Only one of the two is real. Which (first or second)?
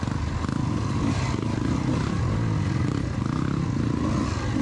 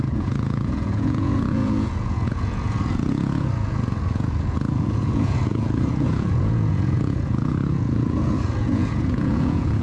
first